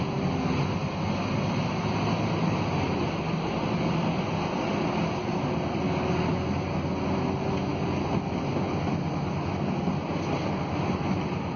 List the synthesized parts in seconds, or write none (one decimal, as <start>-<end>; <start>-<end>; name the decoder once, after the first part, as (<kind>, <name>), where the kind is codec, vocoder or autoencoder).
none